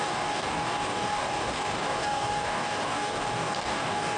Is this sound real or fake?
fake